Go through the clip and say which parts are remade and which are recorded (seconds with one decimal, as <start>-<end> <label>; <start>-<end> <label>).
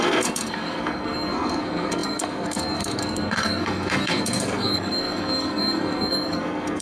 0.0-6.8 remade